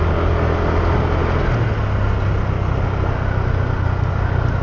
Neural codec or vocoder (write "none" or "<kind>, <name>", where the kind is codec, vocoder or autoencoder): none